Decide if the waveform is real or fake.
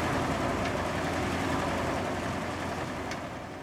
real